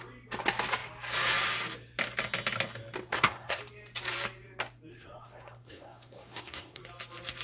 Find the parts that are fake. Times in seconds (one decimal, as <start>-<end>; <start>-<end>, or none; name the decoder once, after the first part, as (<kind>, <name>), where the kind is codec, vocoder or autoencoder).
3.1-3.6 (codec, SNAC); 4.9-6.8